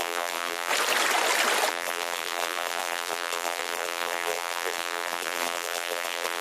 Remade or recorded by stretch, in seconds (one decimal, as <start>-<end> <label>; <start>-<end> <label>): 0.0-0.7 remade; 0.7-1.7 recorded; 1.7-6.4 remade